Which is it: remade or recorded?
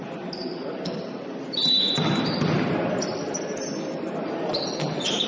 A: recorded